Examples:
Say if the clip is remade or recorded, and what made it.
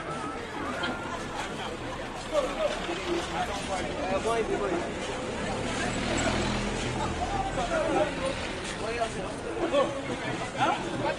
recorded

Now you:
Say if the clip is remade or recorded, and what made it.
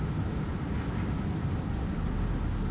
recorded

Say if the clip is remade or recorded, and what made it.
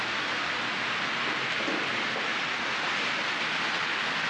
recorded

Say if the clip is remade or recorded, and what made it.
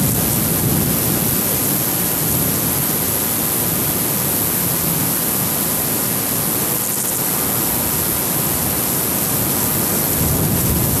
recorded